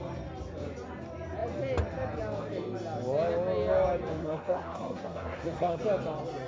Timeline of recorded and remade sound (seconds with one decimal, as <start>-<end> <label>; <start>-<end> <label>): 0.0-4.2 recorded; 4.2-5.8 remade; 5.8-6.5 recorded